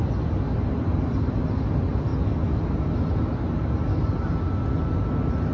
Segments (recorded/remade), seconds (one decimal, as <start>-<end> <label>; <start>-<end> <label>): 0.0-5.5 recorded